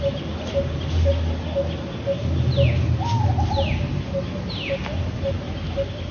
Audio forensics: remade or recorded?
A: recorded